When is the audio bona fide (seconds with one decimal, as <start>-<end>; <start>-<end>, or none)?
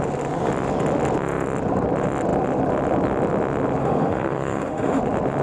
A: 0.0-3.8; 5.0-5.4